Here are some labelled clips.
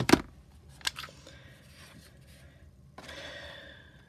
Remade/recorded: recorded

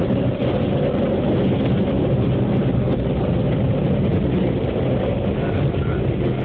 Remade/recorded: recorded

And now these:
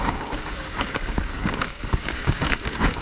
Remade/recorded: remade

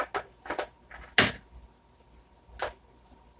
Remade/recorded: recorded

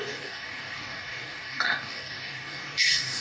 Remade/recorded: remade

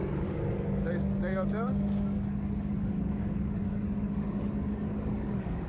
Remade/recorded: remade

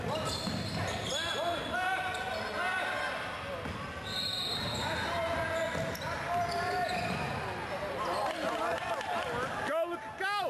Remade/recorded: recorded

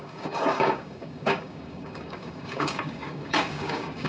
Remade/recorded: remade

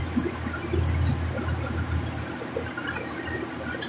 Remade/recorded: recorded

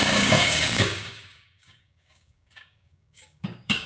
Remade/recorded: remade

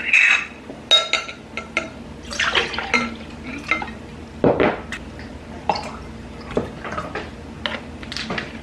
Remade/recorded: recorded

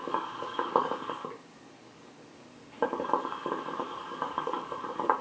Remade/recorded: remade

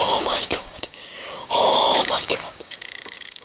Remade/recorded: remade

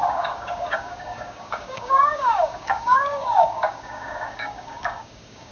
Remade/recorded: remade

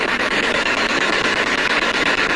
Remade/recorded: remade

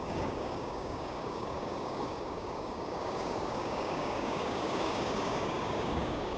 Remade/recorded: remade